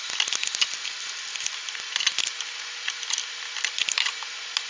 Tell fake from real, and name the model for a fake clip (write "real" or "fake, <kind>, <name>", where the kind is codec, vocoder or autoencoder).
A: real